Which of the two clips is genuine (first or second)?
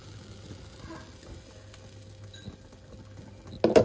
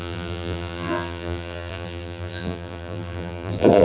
first